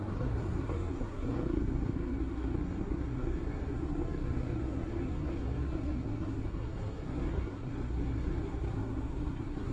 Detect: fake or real fake